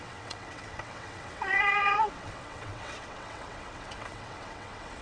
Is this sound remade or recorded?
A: remade